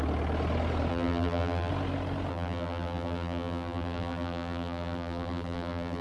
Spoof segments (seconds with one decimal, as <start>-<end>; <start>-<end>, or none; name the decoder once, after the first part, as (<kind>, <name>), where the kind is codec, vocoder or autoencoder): 0.9-1.7 (vocoder, BigVGAN v2); 2.3-6.0